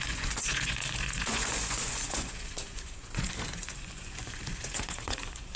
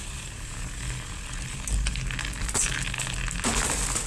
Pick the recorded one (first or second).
second